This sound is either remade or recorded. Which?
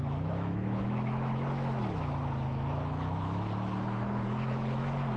remade